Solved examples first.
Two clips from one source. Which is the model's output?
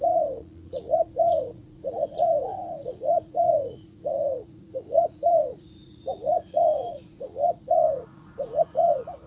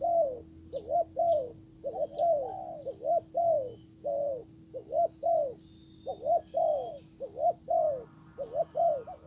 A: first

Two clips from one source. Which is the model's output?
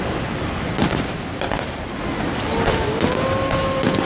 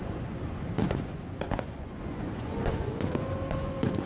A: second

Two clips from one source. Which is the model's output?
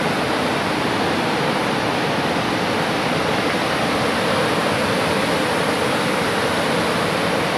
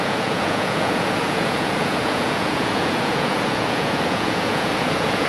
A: second